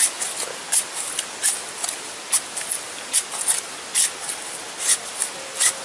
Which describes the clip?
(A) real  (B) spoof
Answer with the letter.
A